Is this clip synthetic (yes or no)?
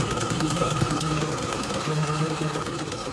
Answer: yes